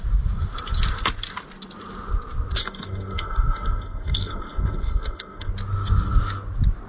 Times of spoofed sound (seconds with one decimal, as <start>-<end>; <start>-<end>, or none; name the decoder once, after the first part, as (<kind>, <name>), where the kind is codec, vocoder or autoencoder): 2.6-5.5 (codec, SNAC)